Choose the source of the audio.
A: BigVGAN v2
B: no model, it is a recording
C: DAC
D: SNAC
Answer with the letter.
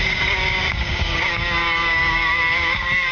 C